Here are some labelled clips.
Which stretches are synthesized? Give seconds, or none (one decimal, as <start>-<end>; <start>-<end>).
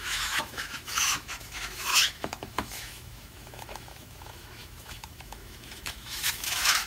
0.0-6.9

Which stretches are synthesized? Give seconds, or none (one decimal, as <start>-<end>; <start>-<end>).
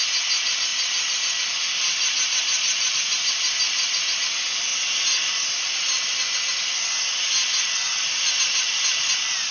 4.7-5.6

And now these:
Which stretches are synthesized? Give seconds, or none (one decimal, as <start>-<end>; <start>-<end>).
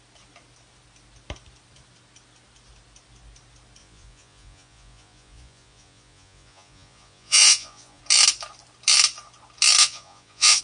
3.8-8.0; 9.8-10.6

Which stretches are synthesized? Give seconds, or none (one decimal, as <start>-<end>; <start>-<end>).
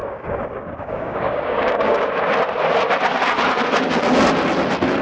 0.0-2.1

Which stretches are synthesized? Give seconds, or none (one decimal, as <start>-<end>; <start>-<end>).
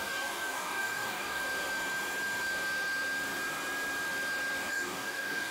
0.0-1.4; 4.7-5.5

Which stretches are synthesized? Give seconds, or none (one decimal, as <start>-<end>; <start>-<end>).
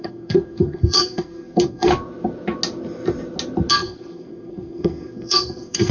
0.0-1.9; 3.7-5.9